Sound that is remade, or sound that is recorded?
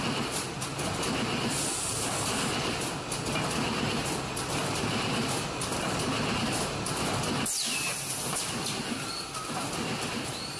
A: recorded